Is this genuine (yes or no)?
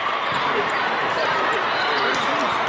no